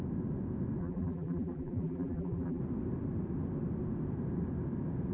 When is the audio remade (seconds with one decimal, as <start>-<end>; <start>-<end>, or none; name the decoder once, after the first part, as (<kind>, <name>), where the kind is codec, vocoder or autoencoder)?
0.8-2.6 (vocoder, BigVGAN v2)